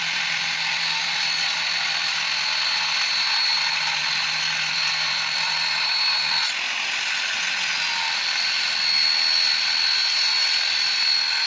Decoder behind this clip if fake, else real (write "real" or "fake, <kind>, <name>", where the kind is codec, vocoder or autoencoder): real